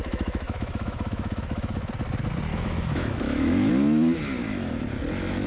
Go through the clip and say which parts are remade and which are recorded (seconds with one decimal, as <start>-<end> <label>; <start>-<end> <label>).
0.0-1.9 remade; 1.9-2.5 recorded; 2.5-3.7 remade; 3.7-5.5 recorded

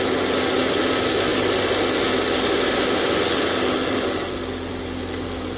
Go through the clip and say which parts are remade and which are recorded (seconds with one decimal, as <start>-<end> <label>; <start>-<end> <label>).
0.0-5.6 recorded

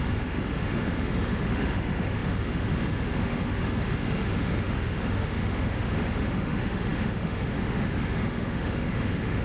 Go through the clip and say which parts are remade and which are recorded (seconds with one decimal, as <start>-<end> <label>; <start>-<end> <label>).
0.0-9.4 remade

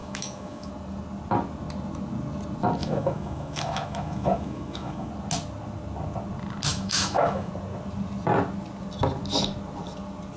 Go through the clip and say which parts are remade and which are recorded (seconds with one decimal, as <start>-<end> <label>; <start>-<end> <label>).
0.0-0.7 remade; 0.7-2.8 recorded; 2.8-5.1 remade; 5.1-6.7 recorded; 6.7-7.5 remade; 7.5-10.4 recorded

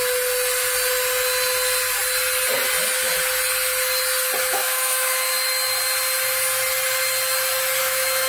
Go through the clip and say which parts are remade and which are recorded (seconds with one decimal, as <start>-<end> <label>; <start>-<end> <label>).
0.0-4.4 recorded; 4.4-5.3 remade; 5.3-7.8 recorded; 7.8-8.3 remade

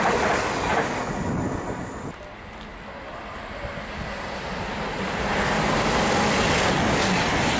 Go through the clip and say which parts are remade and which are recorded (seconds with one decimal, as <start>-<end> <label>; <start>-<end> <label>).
0.0-7.6 recorded

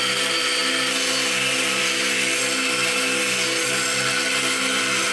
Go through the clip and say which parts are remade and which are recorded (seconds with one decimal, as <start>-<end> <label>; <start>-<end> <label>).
0.0-5.1 recorded

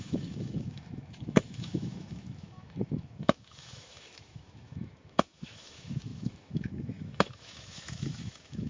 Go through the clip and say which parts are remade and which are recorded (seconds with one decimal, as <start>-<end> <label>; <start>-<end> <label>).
0.0-8.7 remade